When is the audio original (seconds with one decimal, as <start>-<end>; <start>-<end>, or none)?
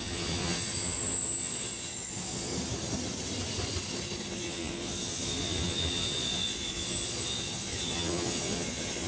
2.5-4.3